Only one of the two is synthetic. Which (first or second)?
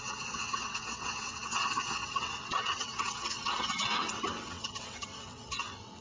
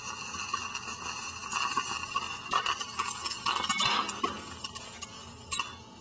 first